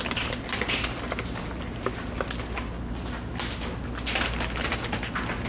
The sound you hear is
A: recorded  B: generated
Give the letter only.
A